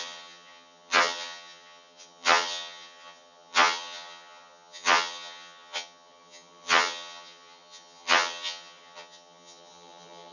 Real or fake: fake